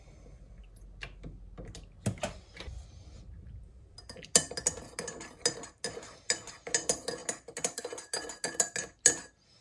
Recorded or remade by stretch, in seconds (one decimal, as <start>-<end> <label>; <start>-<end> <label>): 0.0-9.6 recorded